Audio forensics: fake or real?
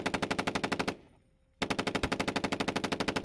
real